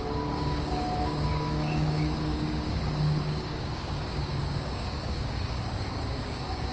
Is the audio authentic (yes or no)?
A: no